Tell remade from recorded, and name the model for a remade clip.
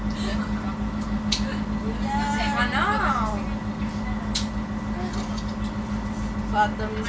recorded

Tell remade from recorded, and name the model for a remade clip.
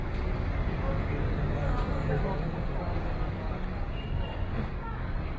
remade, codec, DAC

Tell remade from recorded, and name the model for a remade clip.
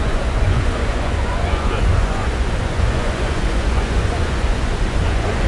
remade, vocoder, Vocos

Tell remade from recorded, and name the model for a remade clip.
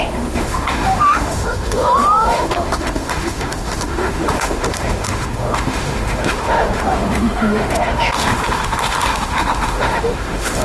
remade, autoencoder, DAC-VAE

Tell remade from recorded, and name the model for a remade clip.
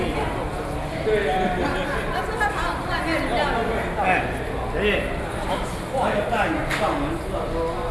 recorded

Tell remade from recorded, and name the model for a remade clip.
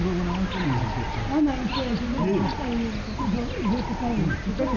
recorded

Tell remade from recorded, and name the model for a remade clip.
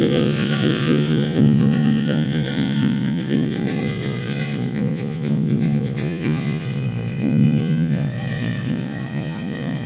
remade, vocoder, Vocos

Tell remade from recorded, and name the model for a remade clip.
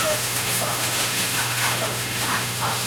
remade, autoencoder, DAC-VAE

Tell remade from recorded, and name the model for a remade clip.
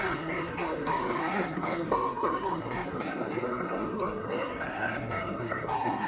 remade, codec, SNAC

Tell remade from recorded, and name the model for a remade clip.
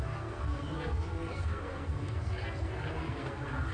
remade, codec, SNAC